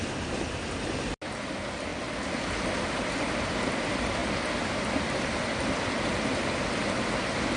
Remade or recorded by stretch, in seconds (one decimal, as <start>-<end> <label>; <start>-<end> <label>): 0.0-7.6 recorded